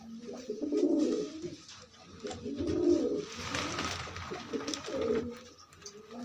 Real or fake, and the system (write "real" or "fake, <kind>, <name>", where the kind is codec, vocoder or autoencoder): real